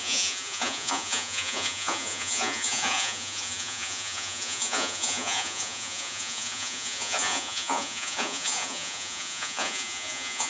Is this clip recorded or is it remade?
remade